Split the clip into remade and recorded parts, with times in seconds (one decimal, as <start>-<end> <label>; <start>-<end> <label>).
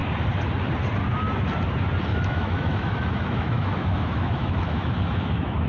0.0-2.1 recorded; 2.1-5.7 remade